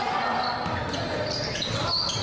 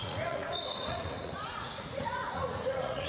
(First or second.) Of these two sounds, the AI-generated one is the second